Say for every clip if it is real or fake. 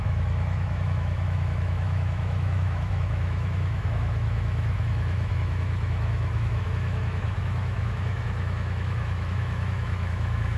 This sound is fake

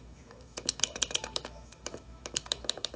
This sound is fake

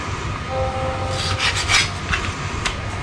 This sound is real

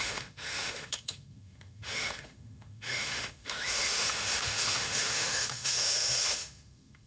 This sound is fake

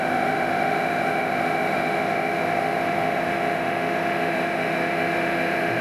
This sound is fake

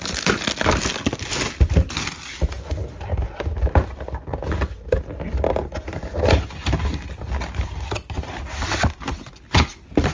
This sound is real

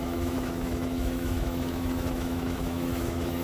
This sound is fake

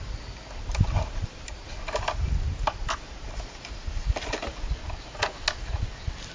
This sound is real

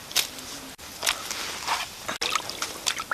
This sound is real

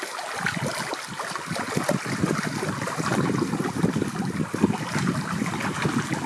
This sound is real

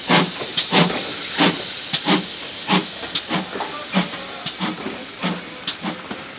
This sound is real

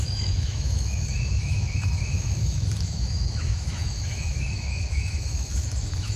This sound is fake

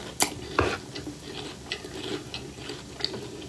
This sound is real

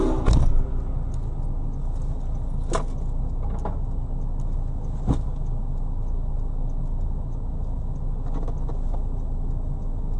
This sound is real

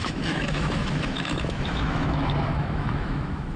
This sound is fake